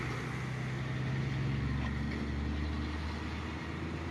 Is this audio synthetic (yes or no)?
no